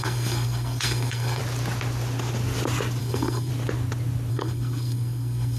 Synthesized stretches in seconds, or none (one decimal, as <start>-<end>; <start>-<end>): 0.0-1.4; 3.0-3.5; 4.3-5.6